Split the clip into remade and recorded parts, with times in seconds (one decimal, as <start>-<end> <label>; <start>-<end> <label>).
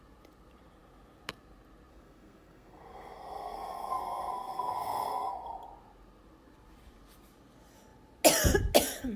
0.0-1.9 recorded; 1.9-5.3 remade; 5.3-9.2 recorded